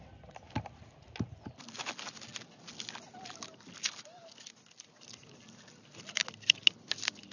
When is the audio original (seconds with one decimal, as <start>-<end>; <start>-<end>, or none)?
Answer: 0.0-7.3